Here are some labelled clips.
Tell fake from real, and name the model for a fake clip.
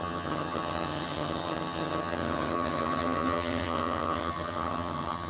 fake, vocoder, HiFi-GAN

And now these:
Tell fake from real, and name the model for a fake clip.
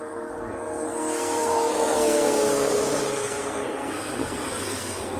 fake, codec, SNAC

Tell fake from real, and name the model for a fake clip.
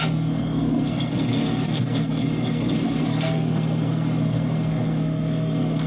fake, codec, SNAC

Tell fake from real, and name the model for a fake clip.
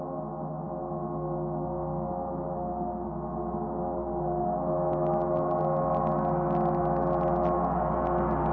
real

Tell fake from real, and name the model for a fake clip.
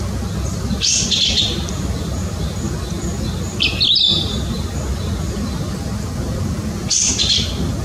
real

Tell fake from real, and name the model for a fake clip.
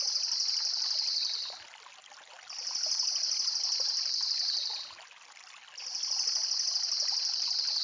real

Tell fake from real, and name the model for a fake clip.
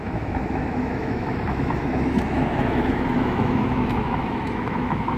fake, autoencoder, DAC-VAE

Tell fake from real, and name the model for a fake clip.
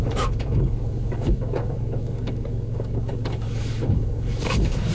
fake, codec, DAC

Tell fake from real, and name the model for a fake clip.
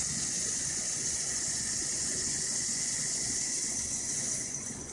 fake, vocoder, Vocos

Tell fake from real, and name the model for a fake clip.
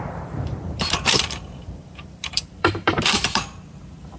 fake, vocoder, BigVGAN v2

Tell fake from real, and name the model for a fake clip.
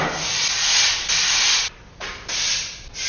real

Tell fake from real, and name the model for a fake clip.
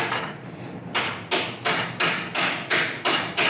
real